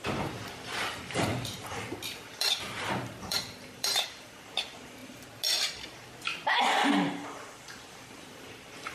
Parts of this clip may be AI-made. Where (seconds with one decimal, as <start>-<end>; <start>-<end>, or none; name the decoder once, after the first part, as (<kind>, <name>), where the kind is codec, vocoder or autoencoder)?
0.0-5.0 (vocoder, BigVGAN v2); 6.9-8.9